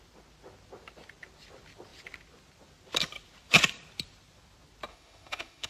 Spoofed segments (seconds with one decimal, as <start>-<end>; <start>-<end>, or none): 4.9-5.7